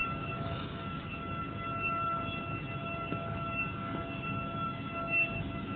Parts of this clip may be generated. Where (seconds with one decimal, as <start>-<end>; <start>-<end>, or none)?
0.0-1.4; 2.8-5.8